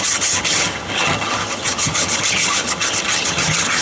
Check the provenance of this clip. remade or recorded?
remade